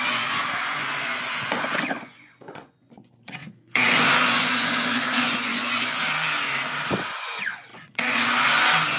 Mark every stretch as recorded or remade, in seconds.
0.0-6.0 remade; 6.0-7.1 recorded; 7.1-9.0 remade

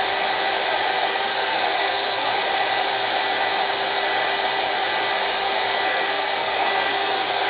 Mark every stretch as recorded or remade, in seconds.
0.0-0.9 recorded; 0.9-2.3 remade; 2.3-5.9 recorded; 5.9-7.5 remade

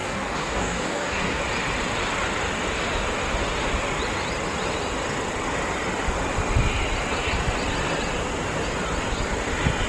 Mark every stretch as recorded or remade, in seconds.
0.0-1.4 remade; 1.4-9.9 recorded